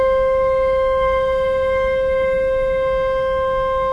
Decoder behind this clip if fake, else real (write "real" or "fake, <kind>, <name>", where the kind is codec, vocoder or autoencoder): real